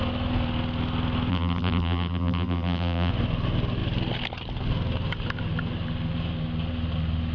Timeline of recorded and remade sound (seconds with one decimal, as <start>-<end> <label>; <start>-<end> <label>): 0.0-1.3 recorded; 1.3-3.1 remade; 3.1-7.3 recorded